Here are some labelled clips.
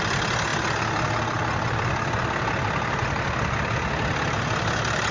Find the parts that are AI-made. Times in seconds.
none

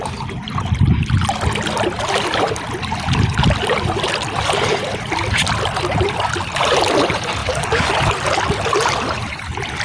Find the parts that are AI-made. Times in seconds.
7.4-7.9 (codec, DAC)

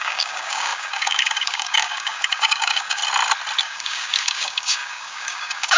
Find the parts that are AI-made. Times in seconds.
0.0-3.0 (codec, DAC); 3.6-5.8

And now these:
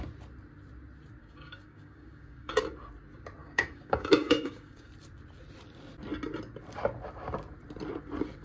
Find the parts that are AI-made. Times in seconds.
1.2-2.6 (codec, DAC); 3.4-4.9

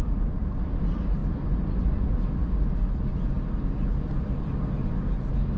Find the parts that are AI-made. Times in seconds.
none